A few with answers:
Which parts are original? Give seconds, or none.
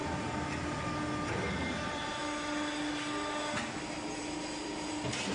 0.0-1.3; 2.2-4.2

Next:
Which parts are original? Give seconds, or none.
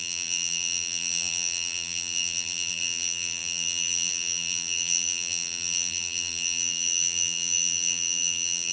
none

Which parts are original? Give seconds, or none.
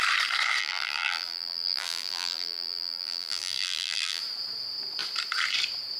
0.0-0.6; 4.2-6.0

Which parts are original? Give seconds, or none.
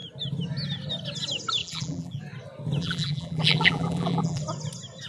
0.0-1.6; 2.2-2.8; 4.4-5.1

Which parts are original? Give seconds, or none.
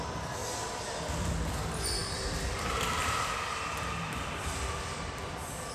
0.0-2.0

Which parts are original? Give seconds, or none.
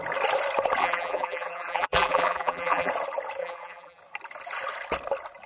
0.0-0.8; 2.9-3.4; 4.0-5.5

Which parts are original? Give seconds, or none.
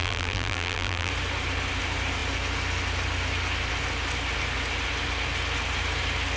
1.1-6.4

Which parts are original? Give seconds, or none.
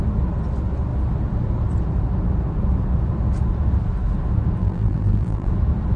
0.0-4.6; 5.5-6.0